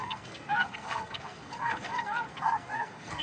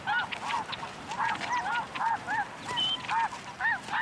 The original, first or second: second